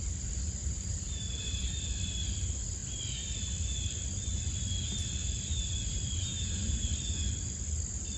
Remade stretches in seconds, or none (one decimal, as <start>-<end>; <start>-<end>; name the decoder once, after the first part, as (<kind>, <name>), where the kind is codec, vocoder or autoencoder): 0.6-1.6 (vocoder, BigVGAN v2); 5.2-6.9